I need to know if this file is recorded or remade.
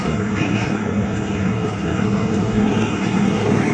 remade